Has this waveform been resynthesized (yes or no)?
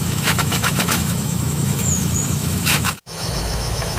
yes